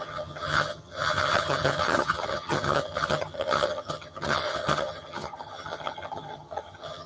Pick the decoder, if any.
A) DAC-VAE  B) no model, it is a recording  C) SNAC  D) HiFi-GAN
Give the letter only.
D